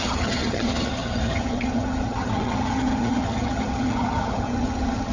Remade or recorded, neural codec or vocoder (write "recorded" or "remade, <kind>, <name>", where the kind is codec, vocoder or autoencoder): remade, vocoder, HiFi-GAN